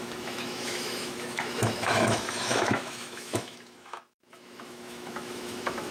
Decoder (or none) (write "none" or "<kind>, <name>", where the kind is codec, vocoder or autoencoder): autoencoder, DAC-VAE